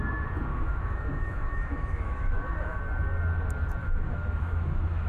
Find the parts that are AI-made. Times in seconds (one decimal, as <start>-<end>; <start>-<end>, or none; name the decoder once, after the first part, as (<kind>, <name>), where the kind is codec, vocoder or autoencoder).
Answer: 0.5-2.8 (autoencoder, DAC-VAE); 3.8-5.1